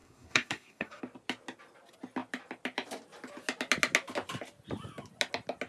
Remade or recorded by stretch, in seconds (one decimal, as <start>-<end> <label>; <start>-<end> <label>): 0.0-1.0 remade; 1.0-5.7 recorded